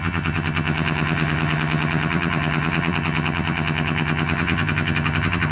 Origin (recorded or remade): remade